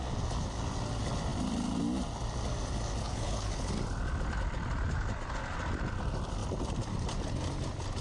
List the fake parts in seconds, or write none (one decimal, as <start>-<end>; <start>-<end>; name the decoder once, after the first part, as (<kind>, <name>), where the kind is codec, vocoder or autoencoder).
3.0-3.7 (codec, HILCodec)